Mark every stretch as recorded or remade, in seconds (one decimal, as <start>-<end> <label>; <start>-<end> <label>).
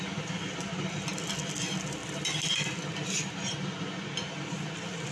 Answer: 0.0-5.1 recorded